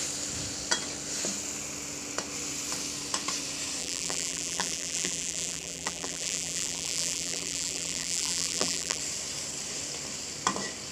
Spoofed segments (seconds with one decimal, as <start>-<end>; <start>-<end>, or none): 3.8-9.0